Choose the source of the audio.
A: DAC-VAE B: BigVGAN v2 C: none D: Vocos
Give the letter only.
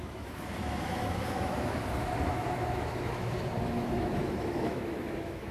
A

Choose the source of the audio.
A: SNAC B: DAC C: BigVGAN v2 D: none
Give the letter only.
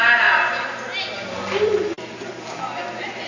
C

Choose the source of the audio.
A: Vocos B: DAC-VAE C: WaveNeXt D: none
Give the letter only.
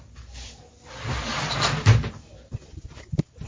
D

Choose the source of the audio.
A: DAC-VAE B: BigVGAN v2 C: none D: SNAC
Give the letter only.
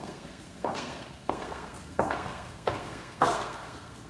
D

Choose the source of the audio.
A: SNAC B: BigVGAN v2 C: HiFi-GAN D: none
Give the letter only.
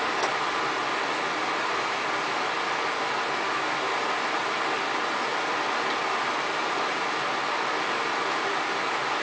D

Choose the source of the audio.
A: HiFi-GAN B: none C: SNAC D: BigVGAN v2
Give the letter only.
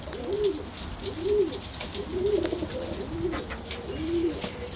B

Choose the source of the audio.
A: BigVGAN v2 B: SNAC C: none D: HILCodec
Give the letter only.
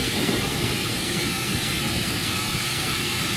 B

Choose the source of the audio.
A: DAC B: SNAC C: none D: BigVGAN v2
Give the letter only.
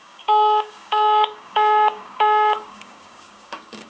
A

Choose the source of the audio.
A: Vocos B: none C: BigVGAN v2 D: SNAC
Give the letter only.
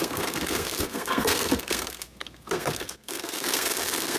D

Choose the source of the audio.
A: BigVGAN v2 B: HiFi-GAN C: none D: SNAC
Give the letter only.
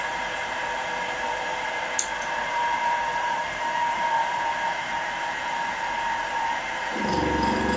A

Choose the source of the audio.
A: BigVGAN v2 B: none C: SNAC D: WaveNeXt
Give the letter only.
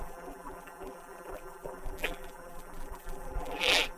A